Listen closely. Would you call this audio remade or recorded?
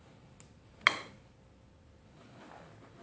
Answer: recorded